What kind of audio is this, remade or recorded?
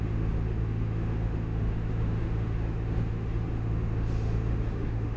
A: remade